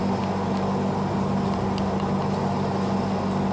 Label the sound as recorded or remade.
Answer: recorded